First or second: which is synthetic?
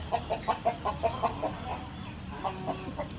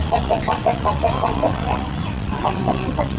second